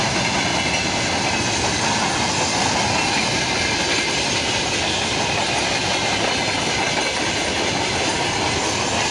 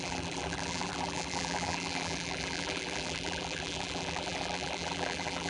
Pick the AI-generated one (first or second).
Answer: second